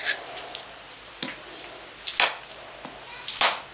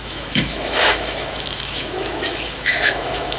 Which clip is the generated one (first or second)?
second